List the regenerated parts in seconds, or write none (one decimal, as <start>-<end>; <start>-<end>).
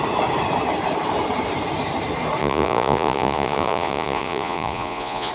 2.4-5.3